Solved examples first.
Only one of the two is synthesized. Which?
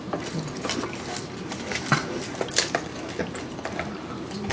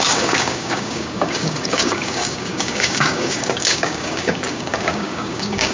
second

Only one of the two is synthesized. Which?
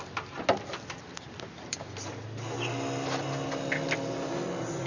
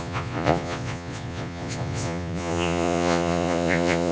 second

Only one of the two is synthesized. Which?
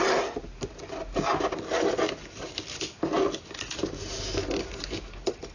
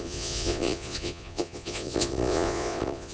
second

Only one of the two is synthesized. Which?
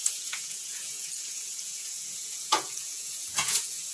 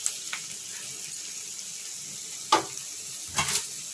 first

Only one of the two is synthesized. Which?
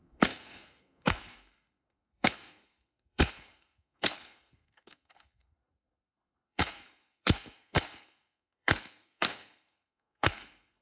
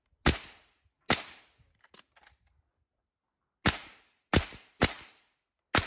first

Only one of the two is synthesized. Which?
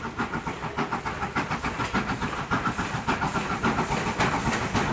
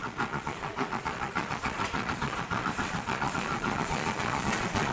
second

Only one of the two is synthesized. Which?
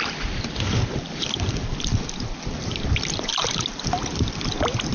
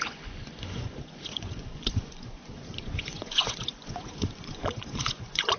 second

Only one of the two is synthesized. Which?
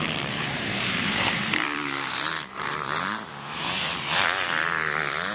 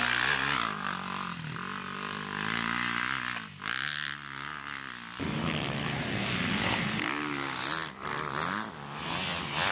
first